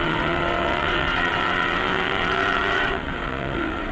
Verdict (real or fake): fake